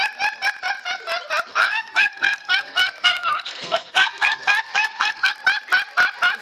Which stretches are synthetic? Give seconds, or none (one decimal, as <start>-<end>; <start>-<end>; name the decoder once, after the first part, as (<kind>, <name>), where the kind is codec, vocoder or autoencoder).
1.5-5.3 (codec, SNAC)

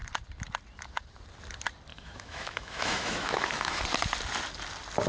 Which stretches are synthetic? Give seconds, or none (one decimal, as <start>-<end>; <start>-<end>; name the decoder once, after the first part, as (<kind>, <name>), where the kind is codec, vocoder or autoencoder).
1.9-3.8 (autoencoder, DAC-VAE)